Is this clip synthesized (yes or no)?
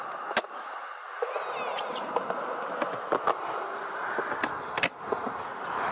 no